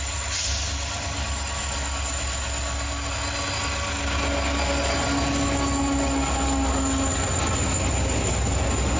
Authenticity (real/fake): real